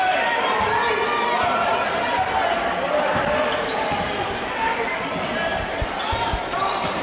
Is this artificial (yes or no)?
no